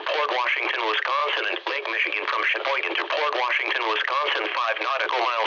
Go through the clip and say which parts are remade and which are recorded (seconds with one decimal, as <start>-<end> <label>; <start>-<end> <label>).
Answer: 0.0-1.2 recorded; 1.2-2.0 remade; 2.0-5.5 recorded

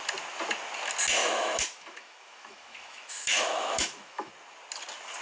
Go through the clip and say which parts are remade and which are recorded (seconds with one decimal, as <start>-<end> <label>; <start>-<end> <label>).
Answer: 0.0-1.2 recorded; 1.2-4.3 remade; 4.3-5.2 recorded

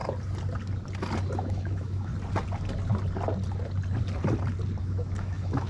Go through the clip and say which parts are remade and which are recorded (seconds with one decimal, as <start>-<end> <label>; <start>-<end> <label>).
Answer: 0.0-1.4 recorded; 1.4-2.1 remade; 2.1-4.8 recorded; 4.8-5.7 remade